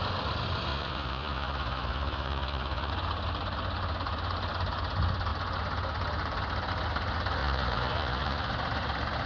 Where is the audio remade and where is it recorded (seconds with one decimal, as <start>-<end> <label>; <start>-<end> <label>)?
0.0-0.7 recorded; 0.7-2.9 remade; 2.9-7.4 recorded; 7.4-8.5 remade; 8.5-9.3 recorded